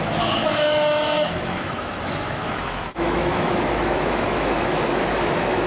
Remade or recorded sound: remade